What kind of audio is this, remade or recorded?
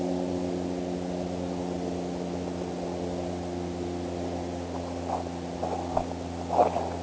recorded